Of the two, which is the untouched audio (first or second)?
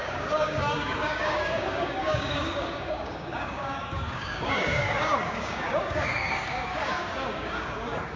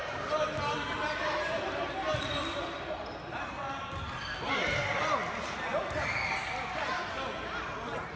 second